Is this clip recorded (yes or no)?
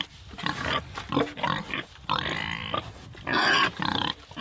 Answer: yes